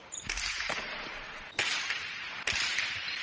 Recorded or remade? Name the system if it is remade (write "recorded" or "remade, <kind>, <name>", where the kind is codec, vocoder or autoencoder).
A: recorded